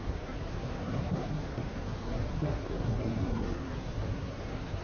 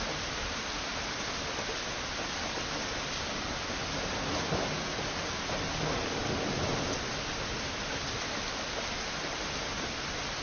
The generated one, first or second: first